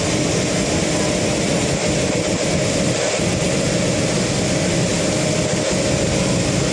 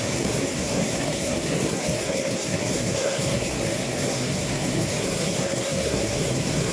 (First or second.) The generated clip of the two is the second